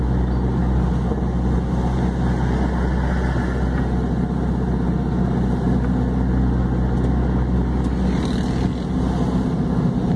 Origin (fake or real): real